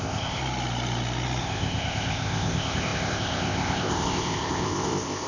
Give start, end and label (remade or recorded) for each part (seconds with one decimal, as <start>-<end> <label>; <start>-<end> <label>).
0.0-0.4 remade; 0.4-1.4 recorded; 1.4-5.3 remade